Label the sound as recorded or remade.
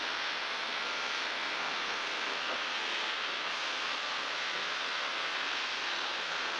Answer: remade